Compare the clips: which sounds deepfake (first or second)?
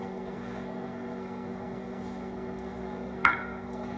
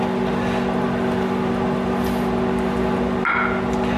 first